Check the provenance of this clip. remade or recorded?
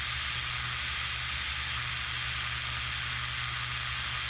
recorded